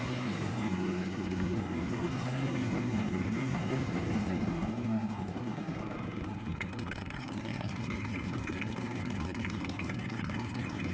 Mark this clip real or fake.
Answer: fake